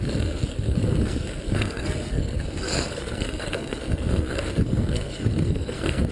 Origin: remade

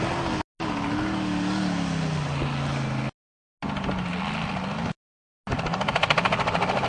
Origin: recorded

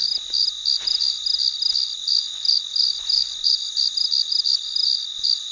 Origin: remade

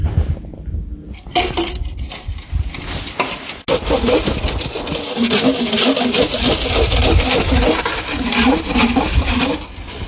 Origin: recorded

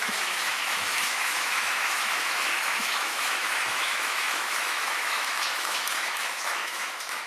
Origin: remade